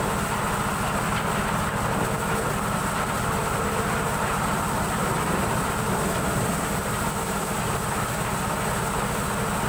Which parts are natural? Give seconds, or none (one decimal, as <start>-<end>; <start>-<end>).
0.0-3.4; 6.5-9.7